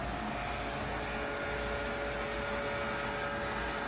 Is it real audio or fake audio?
real